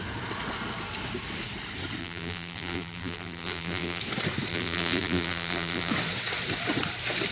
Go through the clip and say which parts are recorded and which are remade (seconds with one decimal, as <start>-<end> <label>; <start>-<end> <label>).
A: 0.0-2.0 recorded; 2.0-4.0 remade; 4.0-4.5 recorded; 4.5-5.9 remade; 5.9-7.3 recorded